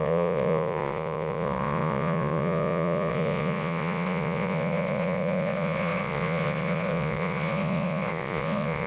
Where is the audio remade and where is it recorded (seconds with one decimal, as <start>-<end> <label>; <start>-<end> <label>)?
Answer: 0.0-8.9 remade